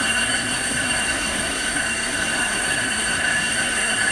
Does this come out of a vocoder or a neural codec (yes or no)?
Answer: yes